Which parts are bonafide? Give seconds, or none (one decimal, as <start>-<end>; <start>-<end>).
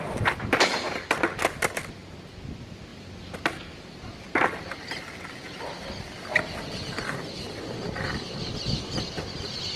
0.0-2.9; 5.6-9.8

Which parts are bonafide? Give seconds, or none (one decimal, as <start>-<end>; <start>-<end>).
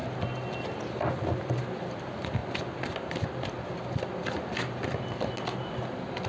0.0-6.3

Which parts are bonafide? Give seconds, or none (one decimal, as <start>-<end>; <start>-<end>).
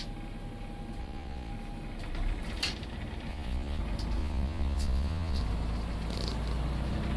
0.0-1.0; 1.5-3.3; 3.8-4.2; 5.4-7.2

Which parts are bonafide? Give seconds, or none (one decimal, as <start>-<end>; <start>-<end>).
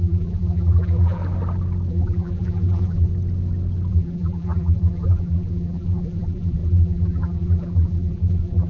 1.2-1.9; 3.1-3.9